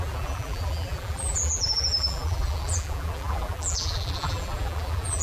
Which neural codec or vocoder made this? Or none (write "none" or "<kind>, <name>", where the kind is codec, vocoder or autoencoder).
vocoder, BigVGAN v2